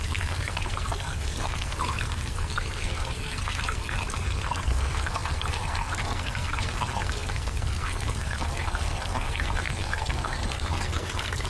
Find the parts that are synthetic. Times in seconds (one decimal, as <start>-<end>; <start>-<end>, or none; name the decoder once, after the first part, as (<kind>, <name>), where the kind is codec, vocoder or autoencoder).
0.0-11.5 (codec, SNAC)